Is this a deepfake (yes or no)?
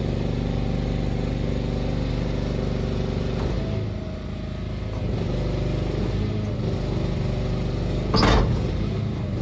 no